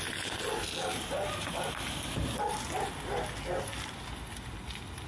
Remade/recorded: recorded